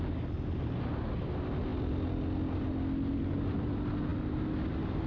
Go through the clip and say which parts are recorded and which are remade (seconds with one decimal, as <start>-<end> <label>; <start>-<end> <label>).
0.0-5.1 recorded